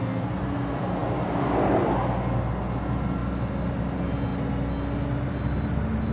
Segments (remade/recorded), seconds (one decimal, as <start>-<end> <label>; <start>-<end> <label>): 0.0-6.1 recorded